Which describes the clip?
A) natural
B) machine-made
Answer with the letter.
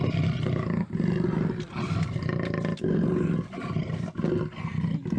A